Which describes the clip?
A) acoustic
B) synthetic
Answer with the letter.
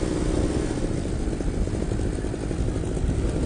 A